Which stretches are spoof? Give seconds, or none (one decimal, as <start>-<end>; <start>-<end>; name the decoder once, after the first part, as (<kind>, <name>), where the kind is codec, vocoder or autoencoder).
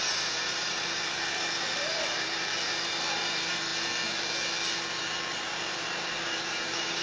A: 0.0-3.7 (vocoder, BigVGAN v2); 5.3-7.0